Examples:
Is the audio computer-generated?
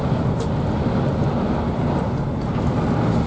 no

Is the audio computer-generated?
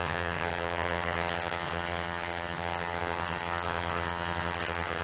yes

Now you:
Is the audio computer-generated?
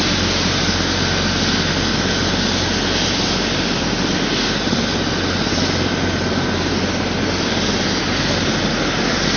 no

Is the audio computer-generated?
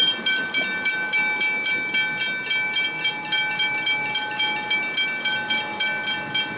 no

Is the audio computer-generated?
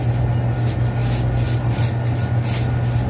no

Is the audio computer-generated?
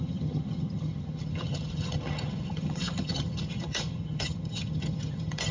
yes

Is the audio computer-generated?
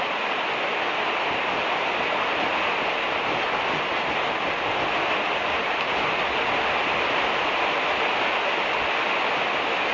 no